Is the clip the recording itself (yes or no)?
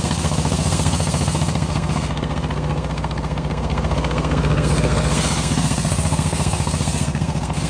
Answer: no